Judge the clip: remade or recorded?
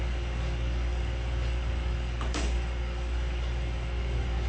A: remade